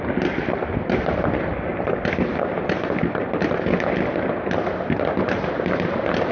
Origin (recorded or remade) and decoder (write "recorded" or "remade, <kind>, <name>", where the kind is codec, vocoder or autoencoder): recorded